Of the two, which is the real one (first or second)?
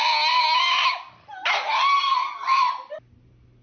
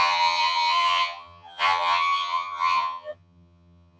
first